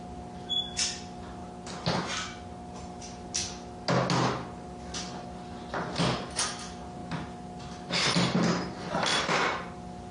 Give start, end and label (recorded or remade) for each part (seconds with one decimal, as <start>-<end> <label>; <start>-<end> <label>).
0.0-1.4 remade; 1.4-6.6 recorded; 6.6-7.0 remade; 7.0-8.1 recorded; 8.1-9.1 remade; 9.1-9.7 recorded; 9.7-10.1 remade